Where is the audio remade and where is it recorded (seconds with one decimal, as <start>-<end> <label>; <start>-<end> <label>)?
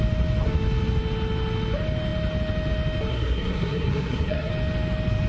0.0-3.1 recorded; 3.1-4.5 remade; 4.5-5.3 recorded